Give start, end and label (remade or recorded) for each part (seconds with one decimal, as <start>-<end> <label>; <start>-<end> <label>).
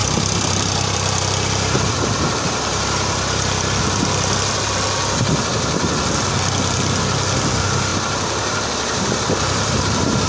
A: 0.0-3.8 remade; 3.8-7.9 recorded; 7.9-10.3 remade